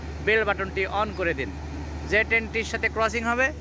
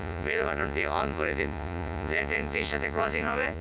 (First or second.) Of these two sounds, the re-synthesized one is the second